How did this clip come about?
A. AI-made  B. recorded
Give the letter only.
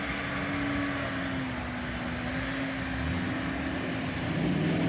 B